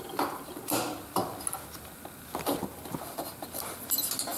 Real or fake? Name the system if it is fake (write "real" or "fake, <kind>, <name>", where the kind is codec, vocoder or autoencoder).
real